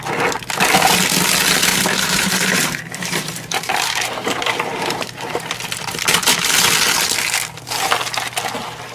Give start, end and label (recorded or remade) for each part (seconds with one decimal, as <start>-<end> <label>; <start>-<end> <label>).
0.0-1.7 recorded; 1.7-5.5 remade; 5.5-8.9 recorded